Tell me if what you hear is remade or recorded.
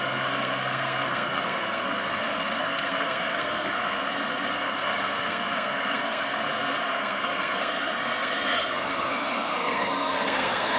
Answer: remade